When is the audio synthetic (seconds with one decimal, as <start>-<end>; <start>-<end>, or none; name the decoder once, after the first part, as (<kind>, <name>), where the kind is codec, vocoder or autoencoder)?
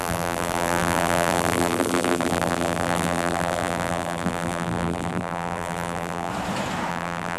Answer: 0.0-6.3 (vocoder, BigVGAN v2); 6.9-7.4